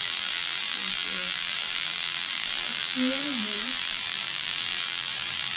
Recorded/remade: remade